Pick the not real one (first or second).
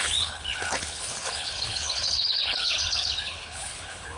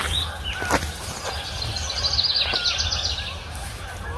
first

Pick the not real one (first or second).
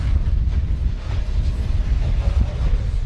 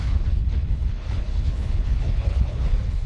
second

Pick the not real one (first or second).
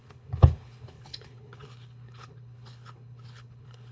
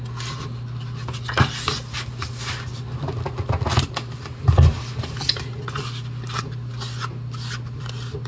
first